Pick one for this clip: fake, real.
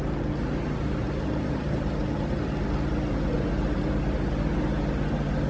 real